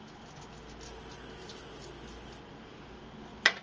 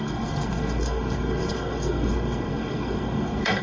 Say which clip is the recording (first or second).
first